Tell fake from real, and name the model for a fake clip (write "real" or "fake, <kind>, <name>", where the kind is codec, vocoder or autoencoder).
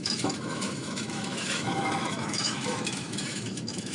fake, autoencoder, DAC-VAE